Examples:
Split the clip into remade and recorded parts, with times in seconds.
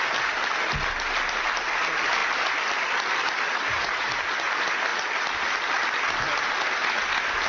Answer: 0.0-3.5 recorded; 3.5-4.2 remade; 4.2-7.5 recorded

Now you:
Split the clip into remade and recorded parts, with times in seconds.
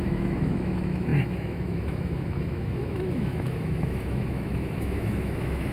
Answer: 0.0-5.7 remade